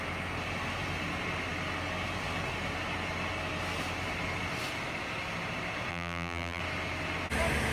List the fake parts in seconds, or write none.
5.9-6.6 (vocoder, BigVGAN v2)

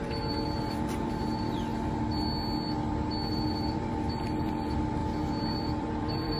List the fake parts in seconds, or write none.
0.0-1.7 (vocoder, BigVGAN v2); 3.3-5.0; 5.5-6.4

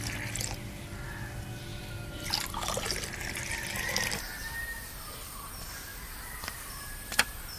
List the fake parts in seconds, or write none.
5.9-7.6 (vocoder, BigVGAN v2)

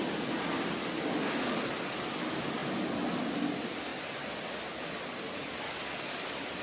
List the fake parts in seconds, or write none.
3.9-4.4 (vocoder, BigVGAN v2)